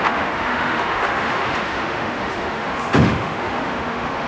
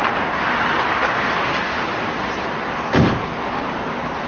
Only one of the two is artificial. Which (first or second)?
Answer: first